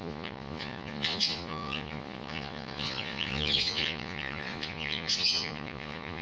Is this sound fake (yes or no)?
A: yes